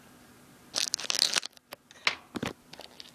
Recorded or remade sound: recorded